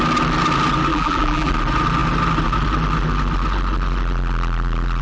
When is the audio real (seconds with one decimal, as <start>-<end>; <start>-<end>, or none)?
0.0-0.9; 1.5-5.0